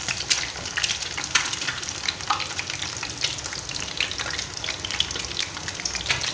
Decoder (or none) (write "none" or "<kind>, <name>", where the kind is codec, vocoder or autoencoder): none